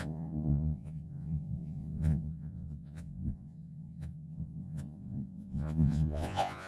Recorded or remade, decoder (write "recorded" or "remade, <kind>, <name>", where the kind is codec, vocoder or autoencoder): remade, vocoder, Vocos